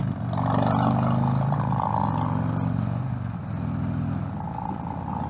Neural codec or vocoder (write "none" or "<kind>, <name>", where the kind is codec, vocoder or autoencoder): none